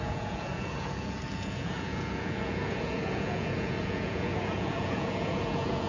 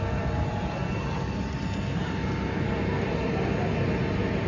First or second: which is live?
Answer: second